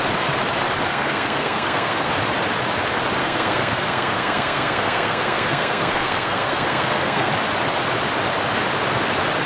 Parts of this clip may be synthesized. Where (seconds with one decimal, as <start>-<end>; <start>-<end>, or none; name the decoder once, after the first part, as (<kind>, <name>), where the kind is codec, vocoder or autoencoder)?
0.9-2.1 (codec, SNAC); 3.2-7.3